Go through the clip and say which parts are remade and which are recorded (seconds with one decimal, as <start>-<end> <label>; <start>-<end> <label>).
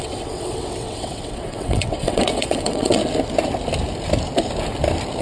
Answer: 0.0-3.0 remade; 3.0-5.2 recorded